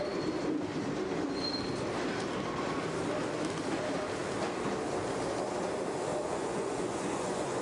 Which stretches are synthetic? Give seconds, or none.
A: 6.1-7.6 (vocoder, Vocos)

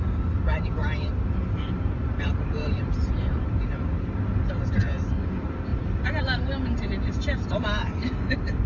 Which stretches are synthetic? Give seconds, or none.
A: 0.8-3.6 (vocoder, BigVGAN v2); 5.7-6.2

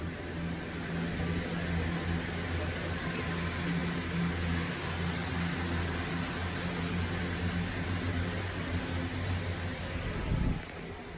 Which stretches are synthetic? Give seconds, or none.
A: none